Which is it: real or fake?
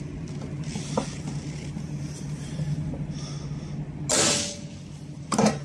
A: real